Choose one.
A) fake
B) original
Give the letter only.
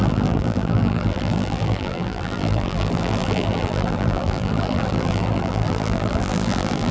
A